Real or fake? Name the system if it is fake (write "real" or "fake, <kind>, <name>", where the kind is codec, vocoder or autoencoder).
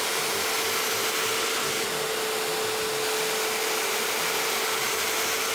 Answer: real